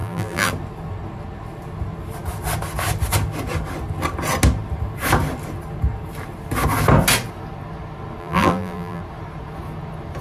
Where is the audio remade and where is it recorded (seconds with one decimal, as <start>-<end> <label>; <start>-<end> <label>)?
0.0-0.5 remade; 0.5-8.2 recorded; 8.2-9.0 remade; 9.0-10.2 recorded